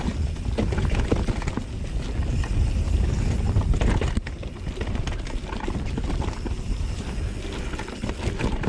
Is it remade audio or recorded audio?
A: recorded